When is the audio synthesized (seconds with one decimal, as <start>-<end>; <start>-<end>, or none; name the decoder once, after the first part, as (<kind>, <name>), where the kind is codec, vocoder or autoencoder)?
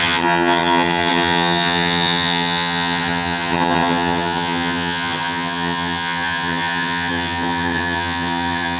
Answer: 0.0-8.8 (vocoder, HiFi-GAN)